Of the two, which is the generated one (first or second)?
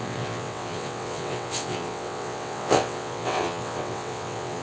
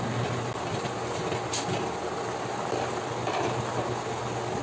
first